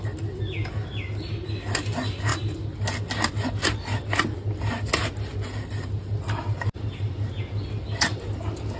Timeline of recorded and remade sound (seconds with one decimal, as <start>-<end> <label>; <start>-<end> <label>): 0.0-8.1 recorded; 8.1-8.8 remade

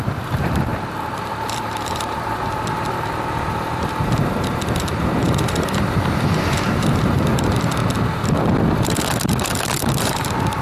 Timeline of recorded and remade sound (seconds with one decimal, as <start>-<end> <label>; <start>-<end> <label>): 0.0-0.7 remade; 0.7-1.2 recorded; 1.2-7.8 remade; 7.8-10.0 recorded; 10.0-10.6 remade

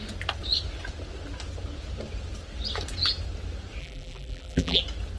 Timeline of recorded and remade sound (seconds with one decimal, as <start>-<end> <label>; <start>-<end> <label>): 0.0-3.8 recorded; 3.8-4.8 remade; 4.8-5.2 recorded

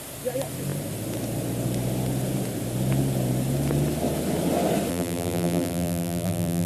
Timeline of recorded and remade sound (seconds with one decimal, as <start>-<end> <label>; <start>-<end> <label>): 0.0-4.9 recorded; 4.9-6.7 remade

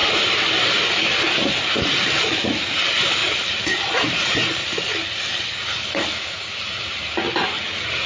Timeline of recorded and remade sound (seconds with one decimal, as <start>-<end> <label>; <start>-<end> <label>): 0.0-2.1 remade; 2.1-3.2 recorded; 3.2-4.2 remade; 4.2-8.1 recorded

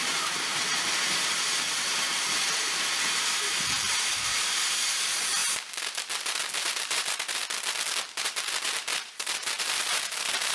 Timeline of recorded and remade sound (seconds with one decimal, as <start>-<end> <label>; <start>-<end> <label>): 0.0-7.4 remade; 7.4-8.1 recorded; 8.1-10.5 remade

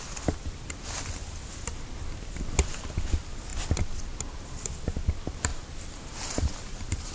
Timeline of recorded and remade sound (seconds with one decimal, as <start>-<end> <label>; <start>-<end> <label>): 0.0-5.5 recorded; 5.5-7.1 remade